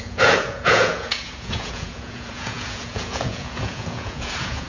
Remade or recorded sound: remade